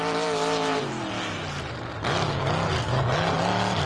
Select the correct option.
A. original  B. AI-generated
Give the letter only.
A